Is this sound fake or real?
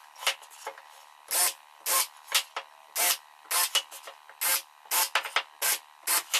real